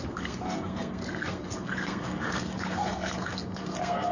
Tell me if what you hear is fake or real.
fake